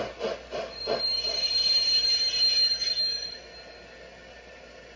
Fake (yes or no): no